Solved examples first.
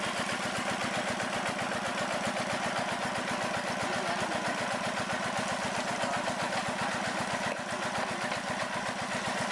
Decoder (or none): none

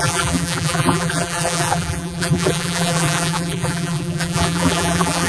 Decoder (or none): vocoder, BigVGAN v2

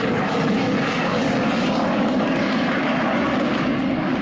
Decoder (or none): codec, DAC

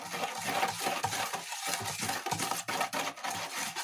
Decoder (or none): none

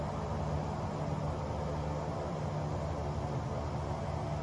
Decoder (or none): none